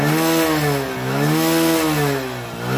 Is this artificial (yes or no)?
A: no